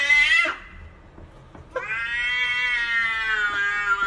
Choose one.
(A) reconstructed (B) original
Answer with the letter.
B